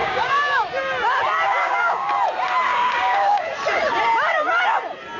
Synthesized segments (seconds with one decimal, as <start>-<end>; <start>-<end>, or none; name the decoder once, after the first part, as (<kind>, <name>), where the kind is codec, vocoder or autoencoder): 0.0-0.7 (codec, DAC); 1.6-2.1; 2.7-3.4